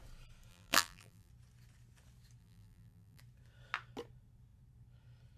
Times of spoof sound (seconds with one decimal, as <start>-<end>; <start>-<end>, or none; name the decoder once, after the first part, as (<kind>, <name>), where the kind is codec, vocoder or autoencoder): 0.5-1.3 (vocoder, BigVGAN v2); 2.4-3.2